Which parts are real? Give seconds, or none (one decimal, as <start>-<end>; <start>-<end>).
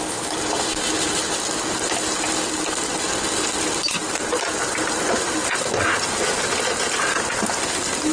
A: 0.0-8.1